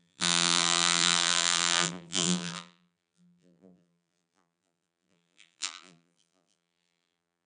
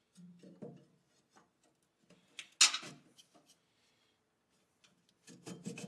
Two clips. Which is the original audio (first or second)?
second